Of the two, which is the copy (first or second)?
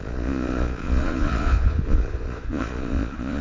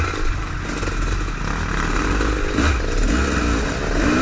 first